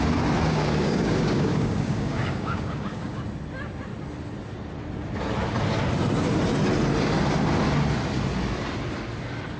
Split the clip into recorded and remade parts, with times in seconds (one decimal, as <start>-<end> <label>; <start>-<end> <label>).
0.0-0.5 recorded; 0.5-3.2 remade; 3.2-9.6 recorded